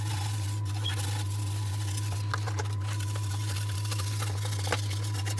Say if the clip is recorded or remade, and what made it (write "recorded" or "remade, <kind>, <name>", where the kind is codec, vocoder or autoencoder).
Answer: recorded